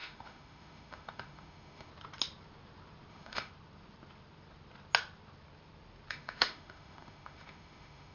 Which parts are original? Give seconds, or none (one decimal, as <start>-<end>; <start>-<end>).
1.9-3.1; 3.5-6.1